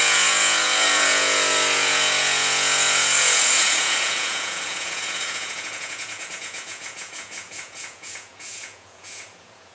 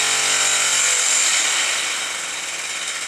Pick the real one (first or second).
second